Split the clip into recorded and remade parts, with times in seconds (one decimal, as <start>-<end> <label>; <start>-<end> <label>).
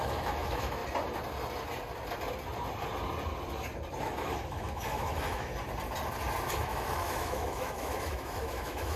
0.0-0.8 remade; 0.8-4.0 recorded; 4.0-5.5 remade; 5.5-6.5 recorded; 6.5-9.0 remade